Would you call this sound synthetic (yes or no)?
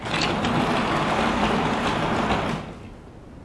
no